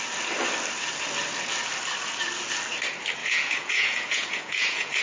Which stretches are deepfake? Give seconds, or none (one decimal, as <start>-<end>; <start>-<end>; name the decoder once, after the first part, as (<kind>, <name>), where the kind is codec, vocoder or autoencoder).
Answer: 3.2-5.0 (vocoder, Vocos)